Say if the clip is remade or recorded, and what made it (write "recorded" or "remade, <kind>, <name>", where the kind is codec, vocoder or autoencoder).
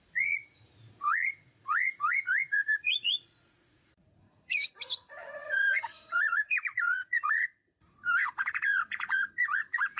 remade, vocoder, Vocos